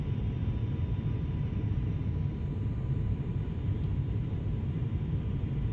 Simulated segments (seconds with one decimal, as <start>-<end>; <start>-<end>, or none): 0.0-0.4; 1.1-2.0; 2.8-3.3; 4.0-5.7